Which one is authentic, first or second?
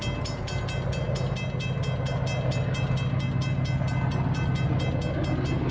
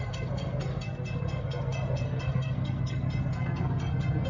first